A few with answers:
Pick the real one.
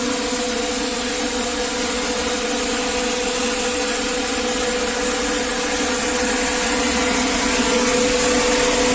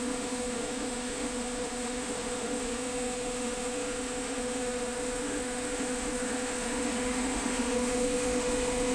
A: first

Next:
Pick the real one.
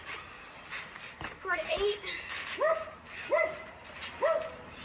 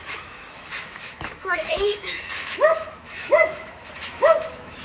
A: first